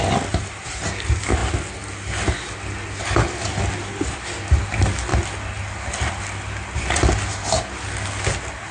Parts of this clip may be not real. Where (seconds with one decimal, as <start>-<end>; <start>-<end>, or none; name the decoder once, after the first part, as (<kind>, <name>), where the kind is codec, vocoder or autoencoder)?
none